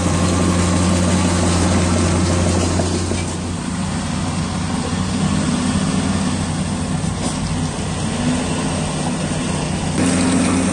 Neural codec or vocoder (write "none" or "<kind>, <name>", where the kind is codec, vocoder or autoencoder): none